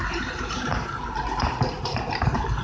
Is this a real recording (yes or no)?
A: no